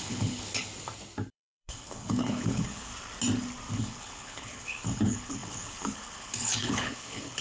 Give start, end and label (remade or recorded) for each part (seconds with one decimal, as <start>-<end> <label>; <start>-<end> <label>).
0.0-0.7 remade; 0.7-1.3 recorded; 1.3-2.9 remade; 2.9-3.7 recorded; 3.7-7.4 remade